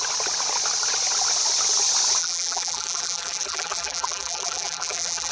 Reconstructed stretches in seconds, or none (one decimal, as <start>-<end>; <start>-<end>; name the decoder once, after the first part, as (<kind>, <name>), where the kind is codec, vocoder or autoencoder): 2.2-5.3 (vocoder, BigVGAN v2)